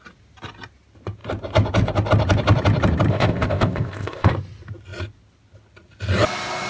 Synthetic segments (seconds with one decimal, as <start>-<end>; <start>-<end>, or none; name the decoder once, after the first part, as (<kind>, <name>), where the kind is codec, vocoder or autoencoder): 3.1-4.3 (codec, ZipCodec)